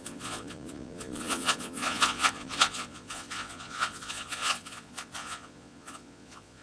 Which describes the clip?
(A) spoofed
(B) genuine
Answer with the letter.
A